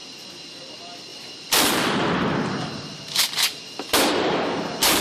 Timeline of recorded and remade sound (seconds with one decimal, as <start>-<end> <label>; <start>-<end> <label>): 0.0-0.5 remade; 0.5-1.1 recorded; 1.1-4.1 remade; 4.1-5.0 recorded